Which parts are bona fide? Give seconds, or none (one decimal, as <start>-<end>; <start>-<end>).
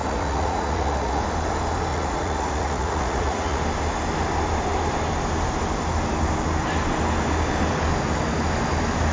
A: 1.2-1.9; 3.6-9.1